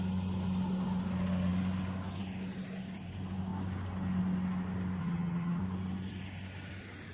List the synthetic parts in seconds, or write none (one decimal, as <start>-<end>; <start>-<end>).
5.0-5.6